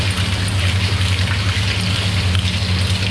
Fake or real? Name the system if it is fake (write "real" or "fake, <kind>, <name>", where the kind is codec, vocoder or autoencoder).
real